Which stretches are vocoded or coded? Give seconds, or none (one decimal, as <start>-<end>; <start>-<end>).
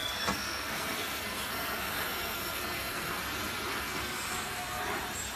0.0-3.2; 3.7-4.8